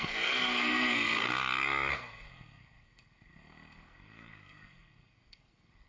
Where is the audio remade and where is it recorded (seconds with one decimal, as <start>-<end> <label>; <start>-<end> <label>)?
0.0-1.3 remade; 1.3-1.9 recorded; 1.9-5.9 remade